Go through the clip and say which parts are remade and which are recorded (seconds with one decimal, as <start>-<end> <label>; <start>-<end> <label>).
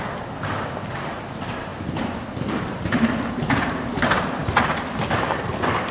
0.0-1.7 recorded; 1.7-2.8 remade; 2.8-4.4 recorded; 4.4-5.9 remade